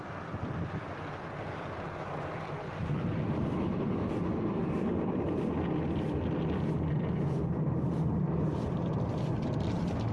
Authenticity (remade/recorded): recorded